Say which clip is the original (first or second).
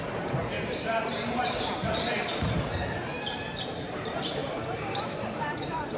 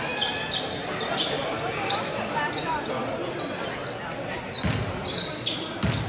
second